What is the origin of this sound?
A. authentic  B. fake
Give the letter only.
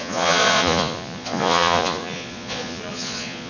B